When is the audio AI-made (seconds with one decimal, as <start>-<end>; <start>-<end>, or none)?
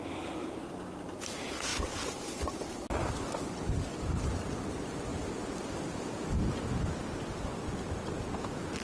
none